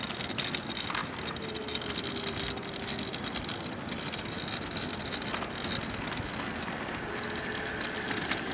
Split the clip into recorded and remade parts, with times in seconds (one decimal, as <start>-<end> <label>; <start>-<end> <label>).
0.0-8.5 recorded